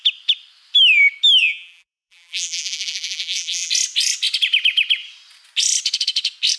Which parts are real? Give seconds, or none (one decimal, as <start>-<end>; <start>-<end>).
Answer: 0.0-1.4; 3.7-6.6